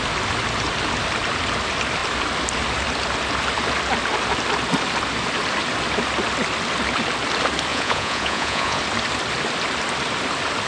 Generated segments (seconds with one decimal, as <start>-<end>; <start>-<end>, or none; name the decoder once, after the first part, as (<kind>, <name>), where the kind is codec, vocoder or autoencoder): 7.7-8.8 (vocoder, Vocos)